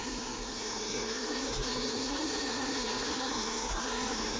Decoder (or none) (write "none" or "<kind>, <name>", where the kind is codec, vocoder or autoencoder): codec, SNAC